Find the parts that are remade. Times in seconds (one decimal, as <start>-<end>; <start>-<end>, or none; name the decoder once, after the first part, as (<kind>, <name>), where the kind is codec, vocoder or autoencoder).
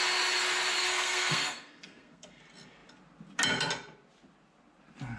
0.8-2.4 (codec, SNAC)